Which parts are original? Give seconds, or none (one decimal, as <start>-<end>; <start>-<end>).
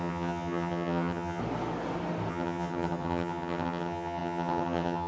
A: 1.4-2.3